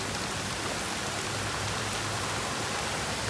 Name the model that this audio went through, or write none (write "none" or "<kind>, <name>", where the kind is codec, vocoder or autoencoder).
none